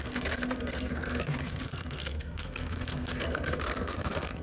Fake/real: fake